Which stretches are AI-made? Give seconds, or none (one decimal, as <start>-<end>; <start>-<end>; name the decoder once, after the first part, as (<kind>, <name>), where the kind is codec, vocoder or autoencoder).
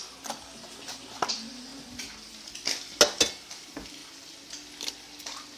none